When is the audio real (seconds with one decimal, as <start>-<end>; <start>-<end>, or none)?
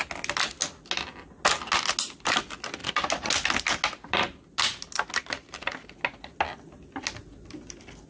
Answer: 0.0-8.1